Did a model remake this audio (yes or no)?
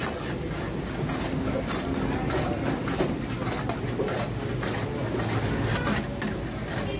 no